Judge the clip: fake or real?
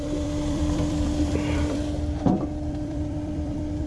fake